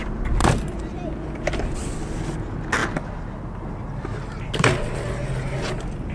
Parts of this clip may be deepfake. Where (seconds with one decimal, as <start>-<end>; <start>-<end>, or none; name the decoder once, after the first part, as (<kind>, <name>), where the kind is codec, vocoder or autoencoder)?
none